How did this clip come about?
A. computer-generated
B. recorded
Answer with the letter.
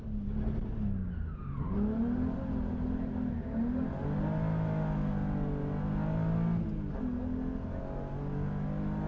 B